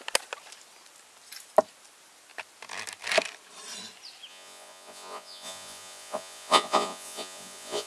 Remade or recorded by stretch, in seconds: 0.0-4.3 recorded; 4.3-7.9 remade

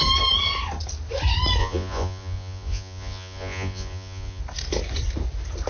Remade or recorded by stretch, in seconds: 0.0-1.6 recorded; 1.6-4.4 remade; 4.4-5.7 recorded